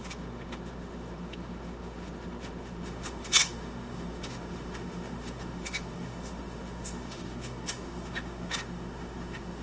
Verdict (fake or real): fake